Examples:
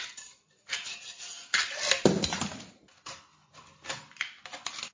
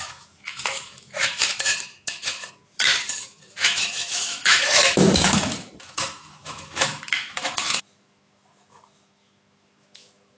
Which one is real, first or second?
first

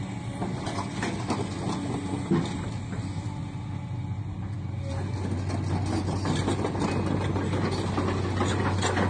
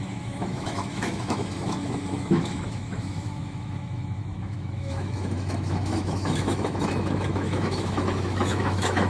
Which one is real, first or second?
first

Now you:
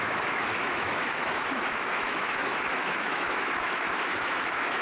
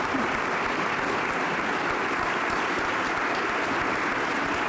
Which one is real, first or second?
second